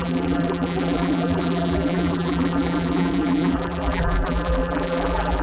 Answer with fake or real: fake